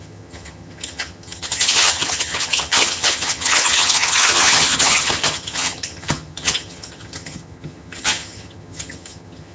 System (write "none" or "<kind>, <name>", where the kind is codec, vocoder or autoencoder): vocoder, HiFi-GAN